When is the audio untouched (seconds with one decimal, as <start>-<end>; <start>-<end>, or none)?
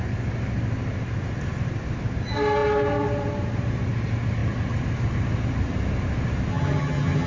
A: 0.0-6.5